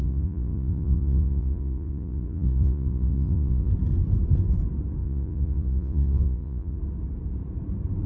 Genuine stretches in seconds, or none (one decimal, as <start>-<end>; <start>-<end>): 3.7-5.0; 6.8-8.1